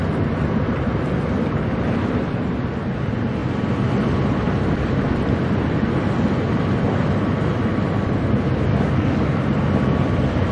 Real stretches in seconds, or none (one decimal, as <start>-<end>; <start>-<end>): 0.0-8.7; 9.4-10.5